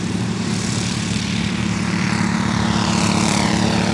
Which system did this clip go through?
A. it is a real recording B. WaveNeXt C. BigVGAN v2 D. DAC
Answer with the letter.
C